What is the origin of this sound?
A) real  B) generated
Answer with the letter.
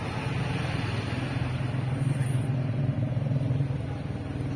A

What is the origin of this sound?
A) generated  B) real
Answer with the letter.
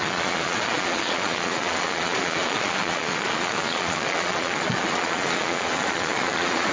A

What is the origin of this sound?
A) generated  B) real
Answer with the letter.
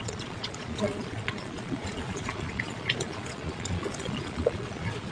A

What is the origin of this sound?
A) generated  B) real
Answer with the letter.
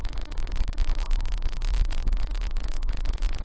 B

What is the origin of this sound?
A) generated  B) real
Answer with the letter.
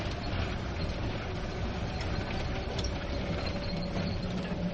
B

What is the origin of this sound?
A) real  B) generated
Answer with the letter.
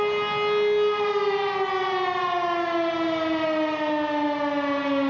A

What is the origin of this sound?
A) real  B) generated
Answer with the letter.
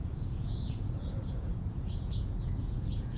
B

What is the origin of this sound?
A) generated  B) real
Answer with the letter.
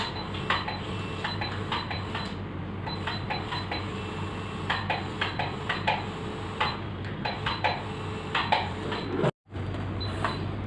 B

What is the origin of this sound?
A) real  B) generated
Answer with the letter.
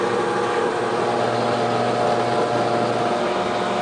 A